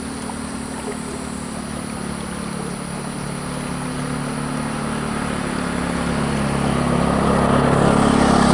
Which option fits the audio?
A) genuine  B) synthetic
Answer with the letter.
A